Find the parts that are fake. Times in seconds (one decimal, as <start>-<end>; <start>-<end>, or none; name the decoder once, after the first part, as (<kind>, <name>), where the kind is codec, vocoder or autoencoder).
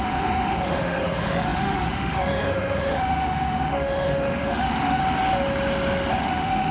0.0-5.0 (autoencoder, DAC-VAE); 6.2-6.7